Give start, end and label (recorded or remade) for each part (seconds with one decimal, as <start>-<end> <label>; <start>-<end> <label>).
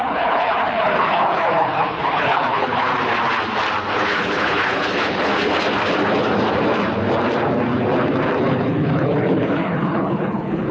0.0-2.9 remade; 2.9-3.9 recorded; 3.9-5.3 remade; 5.3-8.4 recorded; 8.4-10.7 remade